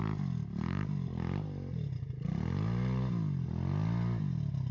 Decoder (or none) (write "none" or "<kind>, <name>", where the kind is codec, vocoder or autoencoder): none